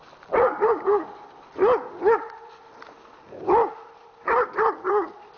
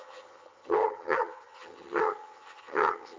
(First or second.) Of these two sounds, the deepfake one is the second